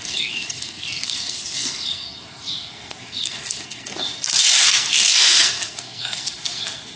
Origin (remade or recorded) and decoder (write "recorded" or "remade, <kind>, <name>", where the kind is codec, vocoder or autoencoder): remade, codec, SNAC